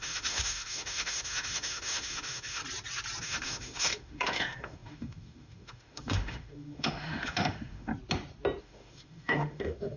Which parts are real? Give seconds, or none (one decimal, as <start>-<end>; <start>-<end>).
2.6-3.2; 7.9-8.6